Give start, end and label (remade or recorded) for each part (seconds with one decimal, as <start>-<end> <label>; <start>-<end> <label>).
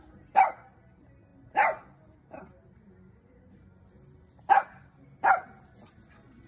0.0-6.5 recorded